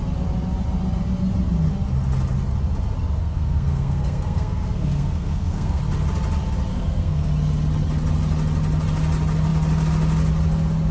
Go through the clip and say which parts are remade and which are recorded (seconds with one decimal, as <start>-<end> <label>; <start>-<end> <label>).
0.0-3.2 recorded; 3.2-5.8 remade; 5.8-6.7 recorded; 6.7-7.3 remade; 7.3-10.9 recorded